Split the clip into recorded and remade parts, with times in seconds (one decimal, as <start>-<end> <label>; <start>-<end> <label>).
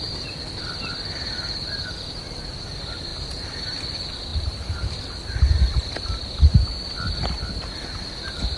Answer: 0.0-3.1 recorded; 3.1-3.6 remade; 3.6-4.3 recorded; 4.3-6.4 remade; 6.4-8.6 recorded